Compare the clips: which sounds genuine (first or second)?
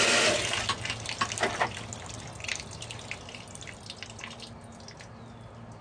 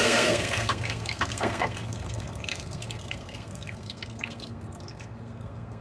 first